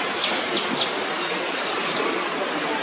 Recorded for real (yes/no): yes